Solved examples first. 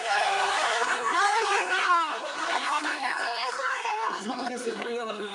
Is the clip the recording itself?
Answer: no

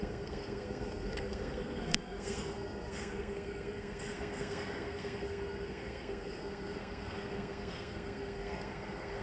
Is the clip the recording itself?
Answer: no